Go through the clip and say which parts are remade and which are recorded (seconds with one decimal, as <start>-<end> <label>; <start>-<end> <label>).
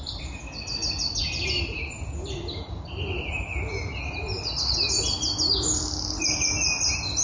0.0-7.2 recorded